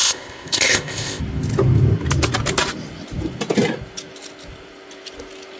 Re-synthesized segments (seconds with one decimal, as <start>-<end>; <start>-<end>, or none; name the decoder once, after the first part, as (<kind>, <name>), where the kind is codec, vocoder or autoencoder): 0.0-1.2 (codec, ZipCodec)